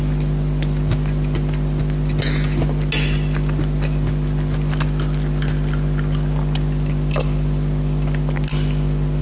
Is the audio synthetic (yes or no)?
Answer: no